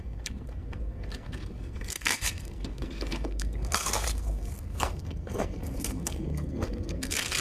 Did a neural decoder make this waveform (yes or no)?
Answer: yes